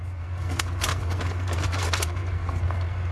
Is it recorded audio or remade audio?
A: remade